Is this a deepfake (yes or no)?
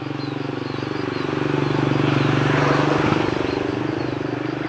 no